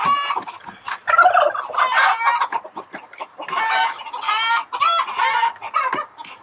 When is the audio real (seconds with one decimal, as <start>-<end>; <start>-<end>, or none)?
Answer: 1.0-1.9; 3.8-4.8